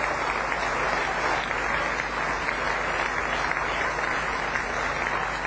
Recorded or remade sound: recorded